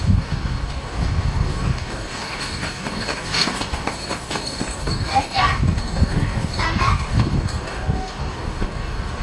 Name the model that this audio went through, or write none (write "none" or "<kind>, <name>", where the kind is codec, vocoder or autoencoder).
codec, DAC